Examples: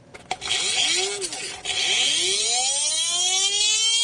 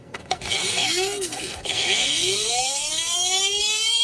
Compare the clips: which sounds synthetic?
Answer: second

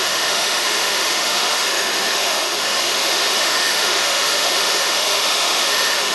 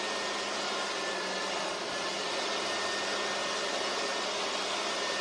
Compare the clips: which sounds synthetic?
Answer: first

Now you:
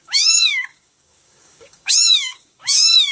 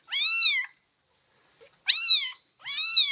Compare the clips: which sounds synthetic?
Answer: first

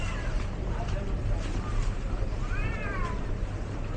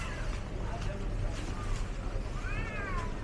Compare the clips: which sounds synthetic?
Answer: first